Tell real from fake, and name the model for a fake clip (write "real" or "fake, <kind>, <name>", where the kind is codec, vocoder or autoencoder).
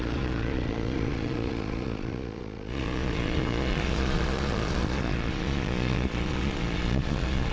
fake, vocoder, Vocos